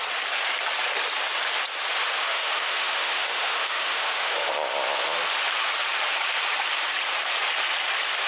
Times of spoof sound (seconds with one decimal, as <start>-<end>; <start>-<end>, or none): 2.2-4.5